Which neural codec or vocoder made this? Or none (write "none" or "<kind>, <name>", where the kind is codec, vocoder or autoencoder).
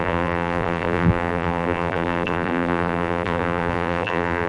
vocoder, BigVGAN v2